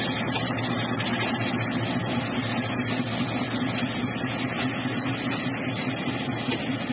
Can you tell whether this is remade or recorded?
recorded